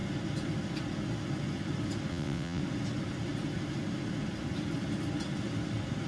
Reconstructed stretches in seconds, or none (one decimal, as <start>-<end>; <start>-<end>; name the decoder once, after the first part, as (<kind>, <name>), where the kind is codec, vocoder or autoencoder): 2.1-2.6 (vocoder, WaveNeXt)